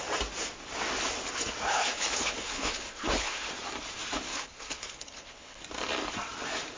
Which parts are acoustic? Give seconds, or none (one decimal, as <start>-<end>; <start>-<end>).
0.0-1.7; 3.5-4.3; 5.6-6.8